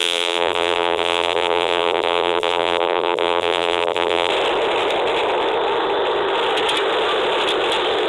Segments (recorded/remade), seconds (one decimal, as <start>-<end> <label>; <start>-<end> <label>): 0.0-4.3 remade; 4.3-8.1 recorded